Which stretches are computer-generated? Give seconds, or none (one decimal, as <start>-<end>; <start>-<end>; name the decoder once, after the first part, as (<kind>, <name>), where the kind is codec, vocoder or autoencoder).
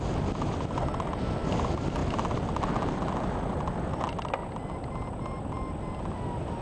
none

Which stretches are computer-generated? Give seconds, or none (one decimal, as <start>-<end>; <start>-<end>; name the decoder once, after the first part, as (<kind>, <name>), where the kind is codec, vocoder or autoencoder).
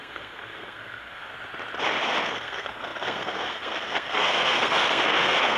0.0-1.3 (codec, SNAC); 2.2-5.6